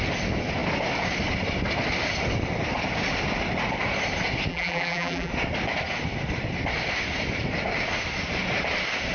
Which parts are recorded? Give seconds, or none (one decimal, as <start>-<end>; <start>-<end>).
0.0-4.5; 5.3-9.1